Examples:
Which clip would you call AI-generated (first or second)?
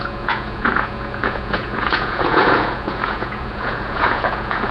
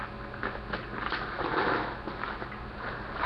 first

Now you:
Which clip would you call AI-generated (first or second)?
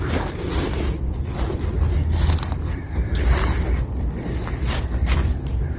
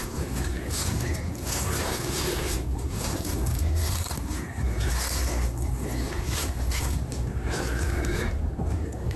second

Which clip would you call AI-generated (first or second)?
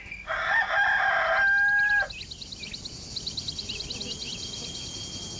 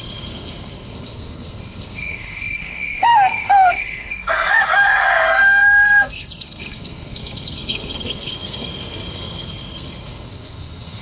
second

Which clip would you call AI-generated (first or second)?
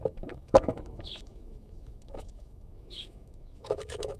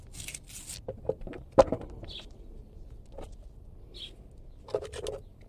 first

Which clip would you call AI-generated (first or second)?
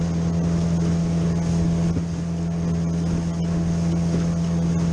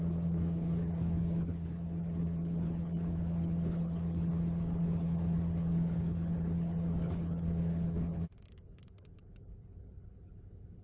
second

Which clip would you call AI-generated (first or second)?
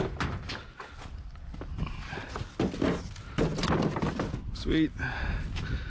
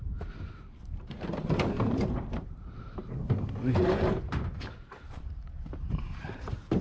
second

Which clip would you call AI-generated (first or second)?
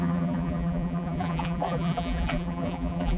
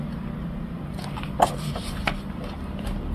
first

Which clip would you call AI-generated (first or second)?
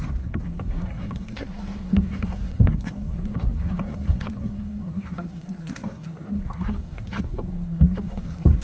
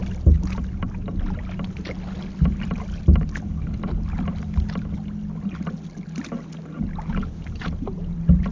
first